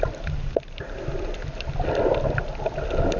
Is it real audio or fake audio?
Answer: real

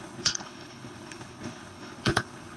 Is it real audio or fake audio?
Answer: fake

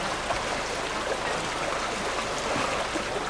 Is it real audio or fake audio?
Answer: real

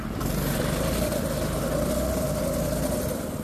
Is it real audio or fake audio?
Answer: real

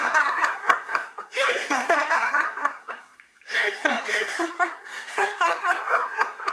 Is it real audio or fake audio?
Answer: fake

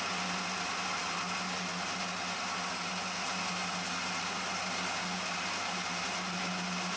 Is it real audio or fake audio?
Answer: real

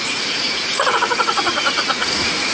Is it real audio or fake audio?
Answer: fake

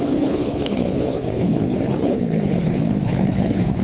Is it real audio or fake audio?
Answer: fake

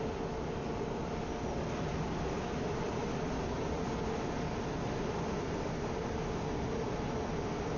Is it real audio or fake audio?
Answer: real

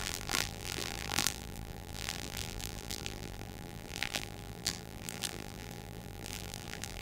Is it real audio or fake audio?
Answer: fake